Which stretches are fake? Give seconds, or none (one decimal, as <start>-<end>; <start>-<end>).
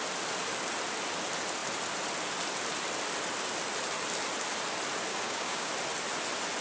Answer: 5.1-5.7